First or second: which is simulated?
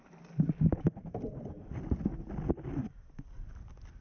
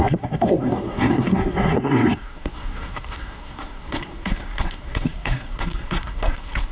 second